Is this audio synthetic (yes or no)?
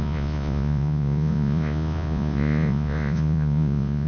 yes